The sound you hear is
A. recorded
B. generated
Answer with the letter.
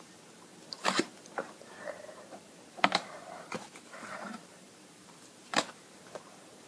B